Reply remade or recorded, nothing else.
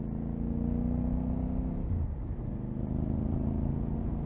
recorded